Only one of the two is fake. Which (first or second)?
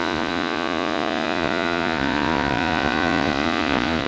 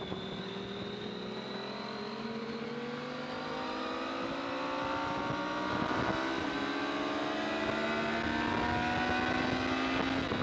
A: first